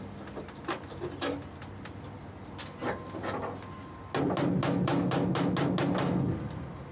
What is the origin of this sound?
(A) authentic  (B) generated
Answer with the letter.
A